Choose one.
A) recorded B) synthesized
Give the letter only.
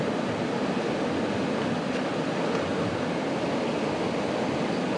A